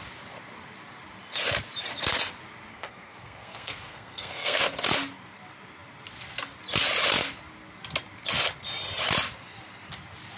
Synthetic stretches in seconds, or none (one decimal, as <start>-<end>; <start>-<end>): 2.7-4.6